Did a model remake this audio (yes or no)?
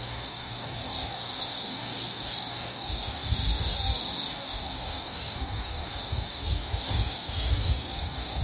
yes